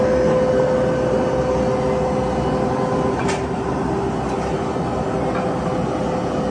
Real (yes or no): yes